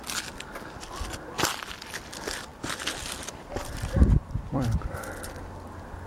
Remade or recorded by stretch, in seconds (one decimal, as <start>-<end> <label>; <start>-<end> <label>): 0.0-2.5 recorded; 2.5-4.9 remade; 4.9-6.1 recorded